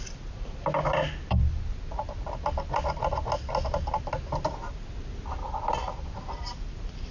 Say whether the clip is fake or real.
real